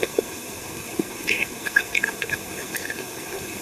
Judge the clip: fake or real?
fake